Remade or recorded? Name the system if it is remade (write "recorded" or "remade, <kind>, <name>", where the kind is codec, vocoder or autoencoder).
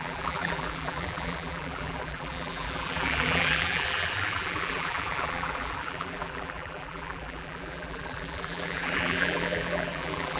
remade, vocoder, BigVGAN v2